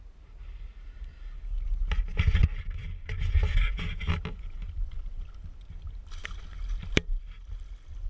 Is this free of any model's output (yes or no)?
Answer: yes